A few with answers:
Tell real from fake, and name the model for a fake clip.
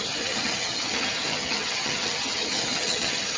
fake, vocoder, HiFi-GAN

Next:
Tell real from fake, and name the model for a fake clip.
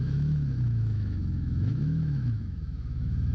fake, autoencoder, DAC-VAE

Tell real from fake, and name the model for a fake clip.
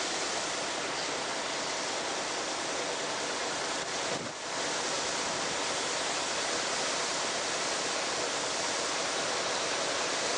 real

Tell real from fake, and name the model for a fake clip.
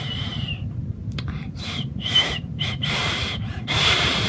fake, vocoder, BigVGAN v2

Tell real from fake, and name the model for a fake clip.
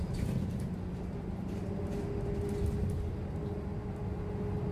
real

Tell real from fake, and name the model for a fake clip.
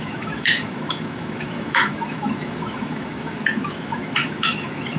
fake, autoencoder, DAC-VAE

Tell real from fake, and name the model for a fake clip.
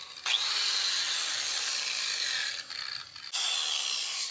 real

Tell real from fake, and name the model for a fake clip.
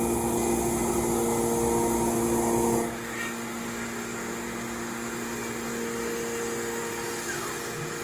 real